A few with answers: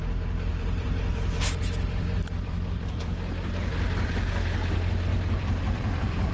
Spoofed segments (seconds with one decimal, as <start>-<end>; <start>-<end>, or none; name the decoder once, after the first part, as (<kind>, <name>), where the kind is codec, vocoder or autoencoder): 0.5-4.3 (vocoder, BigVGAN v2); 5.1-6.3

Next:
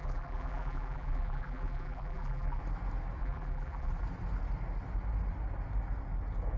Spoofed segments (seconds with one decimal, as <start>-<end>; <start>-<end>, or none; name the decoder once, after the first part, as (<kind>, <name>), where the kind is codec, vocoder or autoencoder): 0.0-2.6 (vocoder, BigVGAN v2); 3.2-3.9

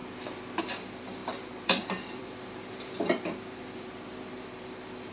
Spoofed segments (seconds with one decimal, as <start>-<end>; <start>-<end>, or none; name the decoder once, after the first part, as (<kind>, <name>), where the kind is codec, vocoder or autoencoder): 0.6-5.1 (vocoder, BigVGAN v2)